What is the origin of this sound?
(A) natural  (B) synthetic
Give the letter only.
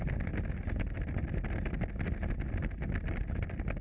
A